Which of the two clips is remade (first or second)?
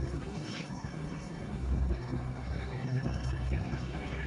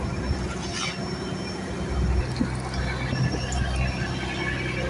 first